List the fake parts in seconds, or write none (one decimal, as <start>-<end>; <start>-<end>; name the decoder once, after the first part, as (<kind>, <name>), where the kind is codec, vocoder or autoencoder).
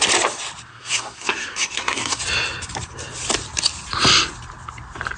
0.7-2.2 (codec, SNAC)